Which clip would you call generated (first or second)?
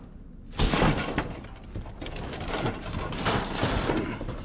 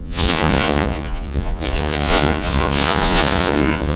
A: second